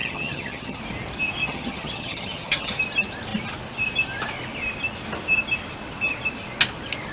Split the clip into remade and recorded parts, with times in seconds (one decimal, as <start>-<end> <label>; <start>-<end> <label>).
0.0-0.8 remade; 0.8-1.4 recorded; 1.4-2.8 remade; 2.8-7.1 recorded